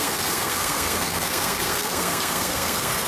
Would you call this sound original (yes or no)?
no